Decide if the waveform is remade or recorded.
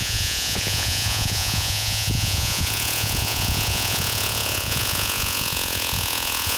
remade